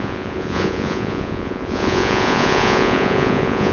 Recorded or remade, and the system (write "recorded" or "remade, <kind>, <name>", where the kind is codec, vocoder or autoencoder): remade, vocoder, Vocos